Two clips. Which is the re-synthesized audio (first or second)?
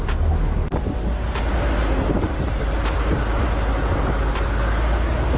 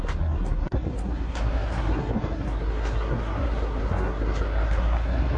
second